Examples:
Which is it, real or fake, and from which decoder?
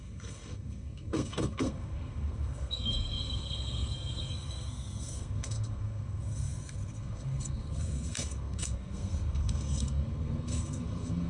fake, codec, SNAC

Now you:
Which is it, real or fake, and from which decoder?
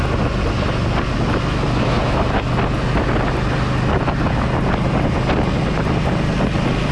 real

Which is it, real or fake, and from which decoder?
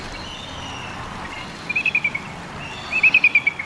real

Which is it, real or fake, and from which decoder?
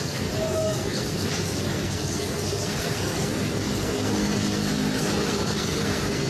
fake, codec, SNAC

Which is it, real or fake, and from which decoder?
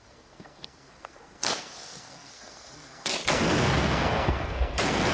fake, codec, SNAC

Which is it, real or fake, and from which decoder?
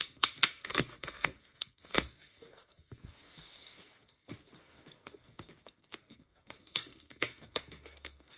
fake, codec, SNAC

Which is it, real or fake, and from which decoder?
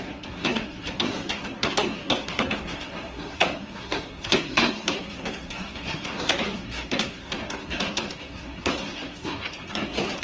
fake, codec, SNAC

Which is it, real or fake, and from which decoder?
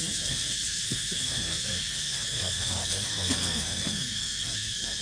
fake, codec, SNAC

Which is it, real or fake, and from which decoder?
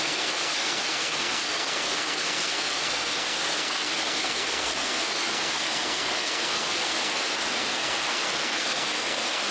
fake, codec, SNAC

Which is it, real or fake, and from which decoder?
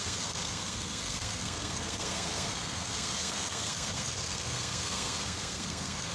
fake, codec, SNAC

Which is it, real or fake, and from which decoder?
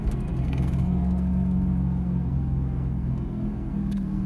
fake, codec, SNAC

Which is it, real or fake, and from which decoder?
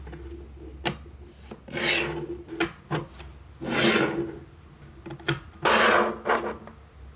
real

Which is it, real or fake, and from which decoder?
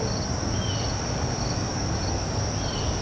real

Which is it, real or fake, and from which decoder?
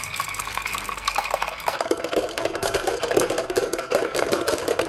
fake, codec, SNAC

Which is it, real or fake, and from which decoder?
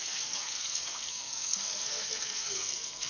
fake, codec, SNAC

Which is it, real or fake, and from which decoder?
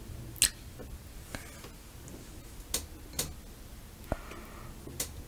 real